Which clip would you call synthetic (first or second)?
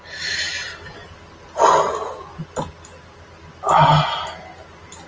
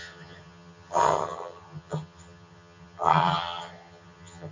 second